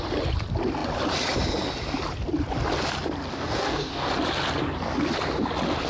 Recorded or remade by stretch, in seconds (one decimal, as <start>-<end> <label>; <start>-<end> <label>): 0.0-3.3 recorded; 3.3-4.1 remade; 4.1-5.9 recorded